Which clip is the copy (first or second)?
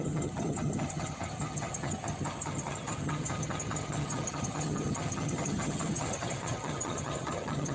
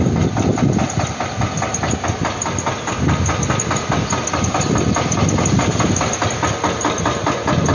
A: first